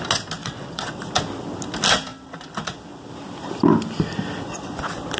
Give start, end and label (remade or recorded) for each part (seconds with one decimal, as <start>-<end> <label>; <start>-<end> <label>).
0.0-0.4 recorded; 0.4-1.0 remade; 1.0-5.2 recorded

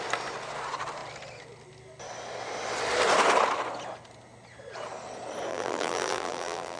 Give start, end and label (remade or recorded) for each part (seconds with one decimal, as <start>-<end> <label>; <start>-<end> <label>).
0.0-5.5 recorded; 5.5-6.8 remade